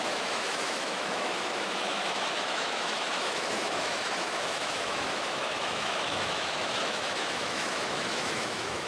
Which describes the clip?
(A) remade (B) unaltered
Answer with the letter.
A